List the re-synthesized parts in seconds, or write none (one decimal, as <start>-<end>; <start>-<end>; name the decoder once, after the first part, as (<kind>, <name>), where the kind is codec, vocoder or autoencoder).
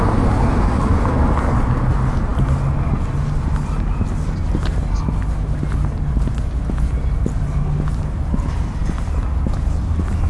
none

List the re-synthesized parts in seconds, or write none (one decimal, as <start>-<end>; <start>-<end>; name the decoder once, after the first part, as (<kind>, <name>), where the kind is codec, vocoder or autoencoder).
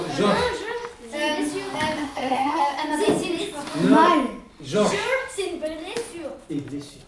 2.0-2.6 (codec, SNAC)